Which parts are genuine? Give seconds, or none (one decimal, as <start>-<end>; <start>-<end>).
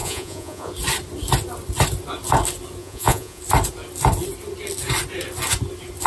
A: 0.7-2.8; 3.4-6.1